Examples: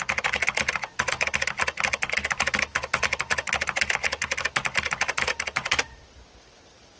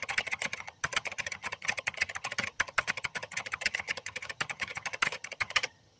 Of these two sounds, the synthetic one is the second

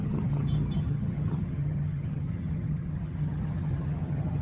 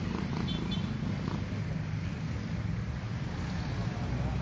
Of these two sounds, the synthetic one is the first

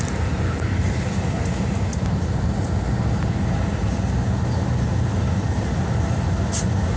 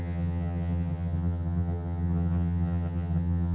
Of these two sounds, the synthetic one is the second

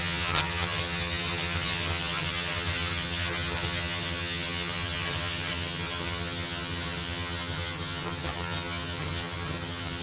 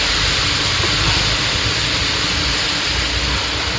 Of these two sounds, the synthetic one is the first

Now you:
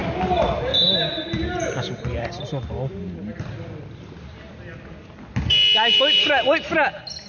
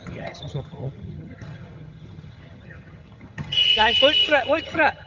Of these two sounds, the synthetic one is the second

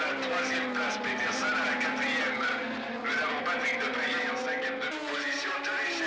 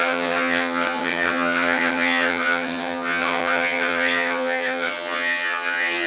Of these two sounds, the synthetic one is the second